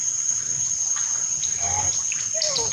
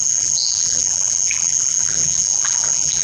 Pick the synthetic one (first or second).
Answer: second